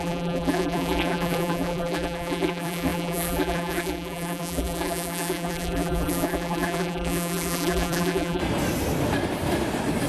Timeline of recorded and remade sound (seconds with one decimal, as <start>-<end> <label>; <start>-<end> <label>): 0.0-8.4 remade; 8.4-10.1 recorded